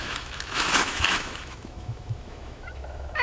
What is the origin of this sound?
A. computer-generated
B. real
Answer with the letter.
A